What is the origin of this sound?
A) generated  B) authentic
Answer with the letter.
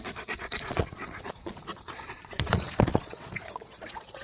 A